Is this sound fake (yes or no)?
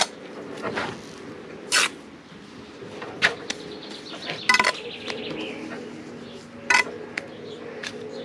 no